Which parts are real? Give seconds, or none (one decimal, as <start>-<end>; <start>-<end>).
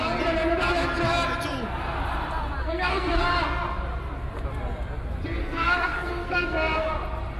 0.0-2.6; 3.2-5.4; 6.9-7.4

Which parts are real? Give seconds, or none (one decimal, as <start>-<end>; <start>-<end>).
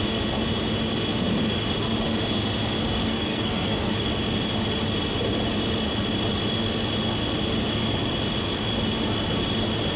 0.0-3.0; 3.9-10.0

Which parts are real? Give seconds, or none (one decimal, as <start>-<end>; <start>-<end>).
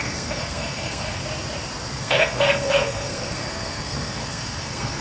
1.2-2.0